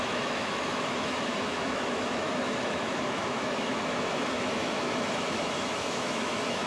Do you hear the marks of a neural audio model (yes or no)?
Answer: yes